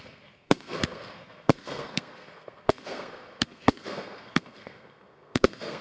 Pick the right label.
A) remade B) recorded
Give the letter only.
A